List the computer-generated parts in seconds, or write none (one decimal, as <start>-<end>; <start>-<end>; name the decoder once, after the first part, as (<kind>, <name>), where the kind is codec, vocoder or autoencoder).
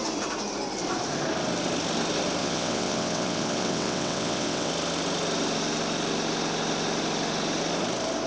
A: 2.4-4.7 (vocoder, WaveNeXt)